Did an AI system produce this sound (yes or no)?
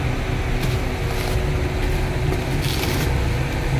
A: no